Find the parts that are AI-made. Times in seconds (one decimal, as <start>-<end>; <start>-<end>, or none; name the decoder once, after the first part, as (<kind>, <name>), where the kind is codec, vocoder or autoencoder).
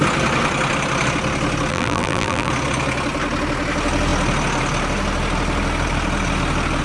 1.7-2.5 (vocoder, BigVGAN v2)